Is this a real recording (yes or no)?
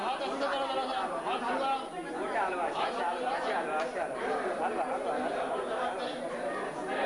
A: yes